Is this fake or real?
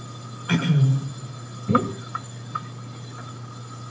real